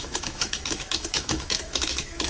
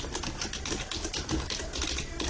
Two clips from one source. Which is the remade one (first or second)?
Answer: first